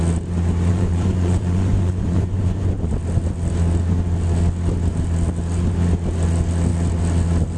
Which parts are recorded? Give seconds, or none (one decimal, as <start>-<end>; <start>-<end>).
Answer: 0.0-0.7; 2.9-7.6